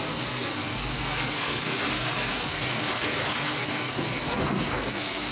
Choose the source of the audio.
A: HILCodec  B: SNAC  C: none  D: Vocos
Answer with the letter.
B